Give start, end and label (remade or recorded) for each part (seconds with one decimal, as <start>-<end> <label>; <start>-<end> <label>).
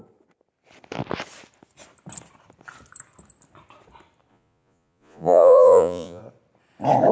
0.0-4.3 recorded; 4.3-6.2 remade; 6.2-7.1 recorded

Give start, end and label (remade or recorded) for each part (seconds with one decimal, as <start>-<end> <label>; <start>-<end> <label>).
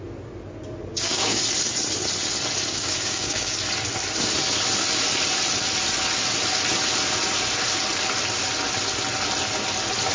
0.0-0.9 recorded; 0.9-1.4 remade; 1.4-2.7 recorded; 2.7-3.6 remade; 3.6-10.1 recorded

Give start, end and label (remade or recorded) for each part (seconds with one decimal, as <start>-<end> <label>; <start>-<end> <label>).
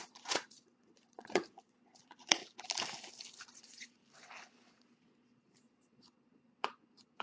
0.0-2.4 remade; 2.4-3.4 recorded; 3.4-4.0 remade; 4.0-4.7 recorded; 4.7-7.2 remade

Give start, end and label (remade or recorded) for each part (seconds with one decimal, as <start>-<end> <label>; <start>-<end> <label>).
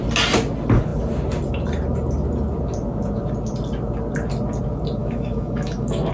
0.0-5.0 recorded; 5.0-6.1 remade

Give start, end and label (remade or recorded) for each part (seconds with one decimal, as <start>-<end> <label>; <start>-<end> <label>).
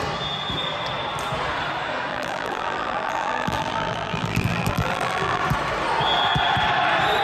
0.0-2.1 recorded; 2.1-5.4 remade; 5.4-7.2 recorded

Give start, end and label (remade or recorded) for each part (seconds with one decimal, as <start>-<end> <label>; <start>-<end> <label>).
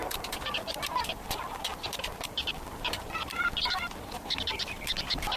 0.0-5.4 remade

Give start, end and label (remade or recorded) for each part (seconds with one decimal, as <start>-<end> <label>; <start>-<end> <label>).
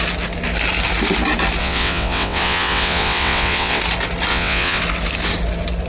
0.0-1.6 recorded; 1.6-3.8 remade; 3.8-4.3 recorded; 4.3-4.8 remade; 4.8-5.9 recorded